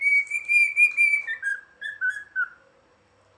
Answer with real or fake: real